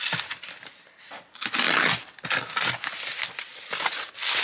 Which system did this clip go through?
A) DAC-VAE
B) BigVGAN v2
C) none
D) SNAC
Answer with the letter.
C